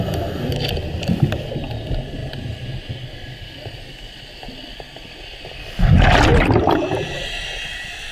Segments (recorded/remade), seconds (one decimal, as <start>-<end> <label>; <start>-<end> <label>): 0.0-8.1 recorded